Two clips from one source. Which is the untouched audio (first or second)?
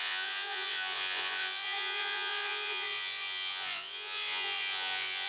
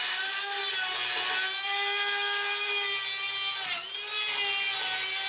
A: second